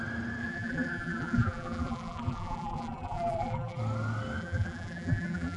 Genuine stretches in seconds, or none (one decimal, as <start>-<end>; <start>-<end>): 0.0-0.4; 3.8-4.4